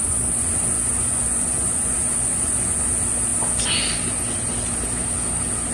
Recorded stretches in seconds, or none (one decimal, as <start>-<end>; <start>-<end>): 2.9-5.7